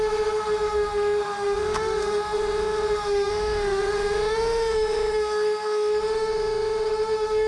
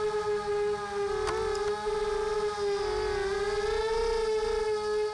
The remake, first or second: first